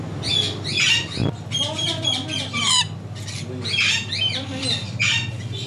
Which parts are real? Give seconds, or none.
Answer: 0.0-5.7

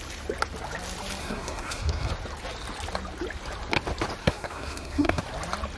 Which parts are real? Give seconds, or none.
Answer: 0.0-1.2; 2.1-4.2; 5.2-5.8

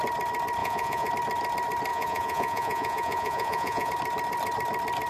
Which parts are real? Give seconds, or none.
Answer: 0.0-0.6; 1.1-1.9; 3.9-5.1

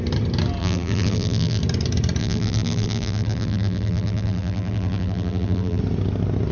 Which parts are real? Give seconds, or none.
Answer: 0.0-0.6; 1.6-2.2; 5.8-6.5

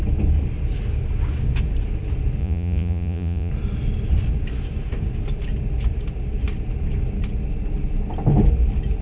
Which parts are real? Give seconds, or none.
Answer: 0.0-2.4; 3.5-9.0

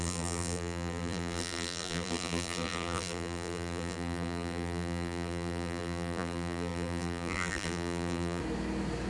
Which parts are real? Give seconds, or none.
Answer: 8.4-9.1